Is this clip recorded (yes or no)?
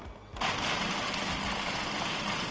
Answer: yes